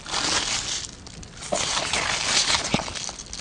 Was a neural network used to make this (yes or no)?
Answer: no